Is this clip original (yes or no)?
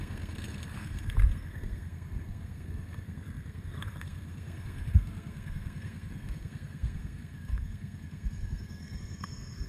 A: no